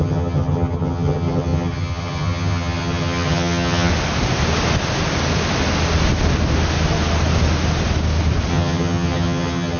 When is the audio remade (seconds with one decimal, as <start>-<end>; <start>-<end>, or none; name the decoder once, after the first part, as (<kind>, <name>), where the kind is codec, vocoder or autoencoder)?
0.0-3.9 (vocoder, HiFi-GAN); 8.5-9.8